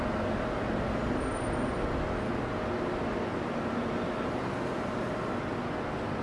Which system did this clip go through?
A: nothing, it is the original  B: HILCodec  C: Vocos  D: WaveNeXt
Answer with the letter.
A